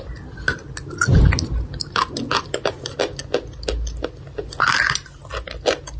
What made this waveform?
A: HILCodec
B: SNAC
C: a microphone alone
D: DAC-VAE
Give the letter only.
C